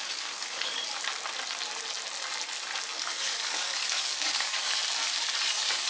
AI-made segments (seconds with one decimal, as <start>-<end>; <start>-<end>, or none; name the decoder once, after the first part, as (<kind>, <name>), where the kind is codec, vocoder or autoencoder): 0.0-1.0 (codec, DAC); 3.0-4.8; 5.4-5.9